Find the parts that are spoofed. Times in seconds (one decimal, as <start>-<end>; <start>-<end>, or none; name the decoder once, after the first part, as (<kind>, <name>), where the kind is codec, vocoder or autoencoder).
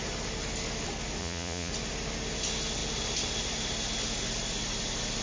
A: 1.2-1.7 (vocoder, Vocos)